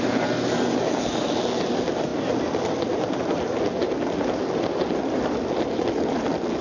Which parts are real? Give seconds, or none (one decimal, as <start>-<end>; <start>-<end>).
0.0-6.6